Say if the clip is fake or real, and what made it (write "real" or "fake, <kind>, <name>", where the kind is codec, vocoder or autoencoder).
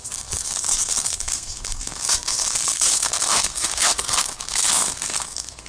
fake, codec, SNAC